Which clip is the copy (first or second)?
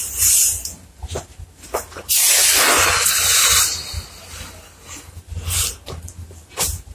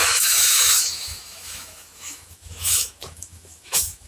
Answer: second